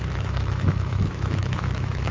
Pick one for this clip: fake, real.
fake